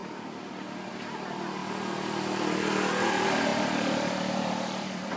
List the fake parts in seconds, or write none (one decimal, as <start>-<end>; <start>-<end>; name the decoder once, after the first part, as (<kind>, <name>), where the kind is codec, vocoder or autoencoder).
0.0-0.9 (vocoder, BigVGAN v2); 1.6-2.9; 3.5-5.2